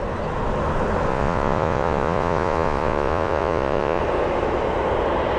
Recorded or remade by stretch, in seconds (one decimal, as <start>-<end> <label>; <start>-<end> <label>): 0.0-1.1 recorded; 1.1-4.0 remade; 4.0-5.4 recorded